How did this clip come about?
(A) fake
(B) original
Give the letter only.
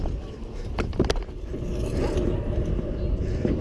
B